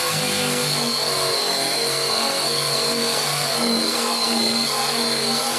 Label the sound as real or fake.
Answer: fake